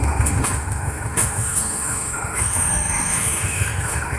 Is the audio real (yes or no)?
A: no